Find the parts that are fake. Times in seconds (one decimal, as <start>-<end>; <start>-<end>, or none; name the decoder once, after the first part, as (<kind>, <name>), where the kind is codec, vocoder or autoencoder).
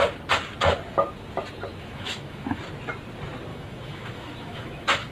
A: 1.7-2.6 (autoencoder, DAC-VAE); 3.5-5.1